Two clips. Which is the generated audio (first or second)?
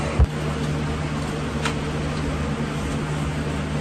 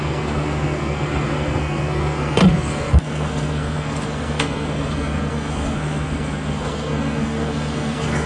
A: second